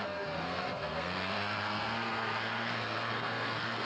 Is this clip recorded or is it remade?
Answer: remade